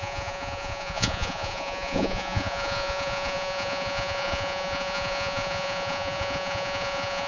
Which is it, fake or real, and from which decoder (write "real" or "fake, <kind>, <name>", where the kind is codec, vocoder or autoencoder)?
fake, vocoder, Vocos